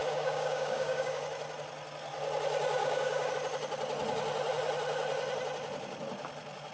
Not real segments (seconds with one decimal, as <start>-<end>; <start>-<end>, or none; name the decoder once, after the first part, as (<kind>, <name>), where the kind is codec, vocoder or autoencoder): 0.0-1.2 (codec, DAC); 2.8-3.3